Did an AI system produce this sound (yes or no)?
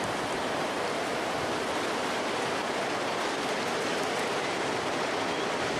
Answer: no